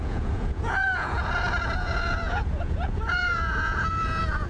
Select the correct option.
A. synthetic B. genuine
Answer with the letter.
A